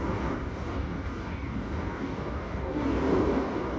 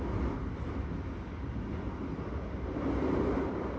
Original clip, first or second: second